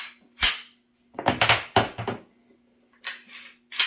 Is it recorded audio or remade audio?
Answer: recorded